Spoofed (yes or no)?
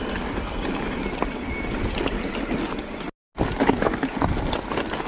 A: no